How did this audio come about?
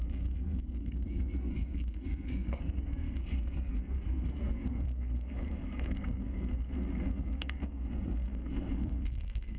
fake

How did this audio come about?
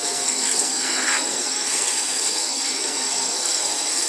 fake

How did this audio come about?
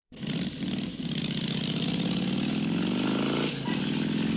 real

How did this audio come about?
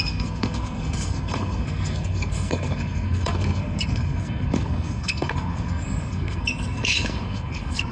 fake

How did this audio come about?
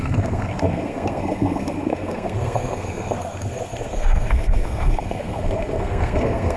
fake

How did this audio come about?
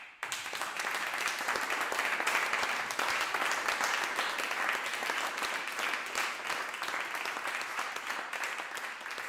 real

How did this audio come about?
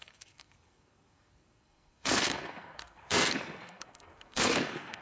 fake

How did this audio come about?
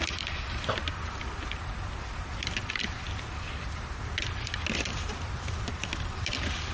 real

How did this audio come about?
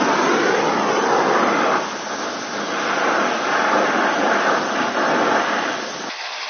real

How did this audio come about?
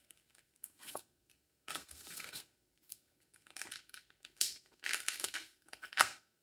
fake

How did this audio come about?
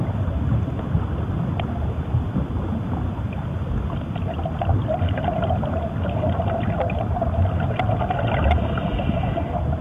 real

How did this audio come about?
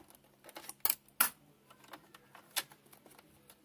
real